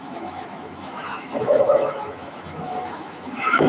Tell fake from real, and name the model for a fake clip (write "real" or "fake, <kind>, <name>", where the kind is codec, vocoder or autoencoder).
fake, autoencoder, DAC-VAE